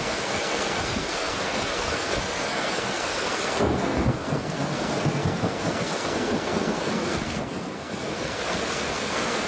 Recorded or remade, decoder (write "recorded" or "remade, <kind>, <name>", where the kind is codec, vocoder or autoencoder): remade, codec, SNAC